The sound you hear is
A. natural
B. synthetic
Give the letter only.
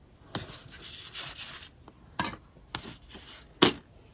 A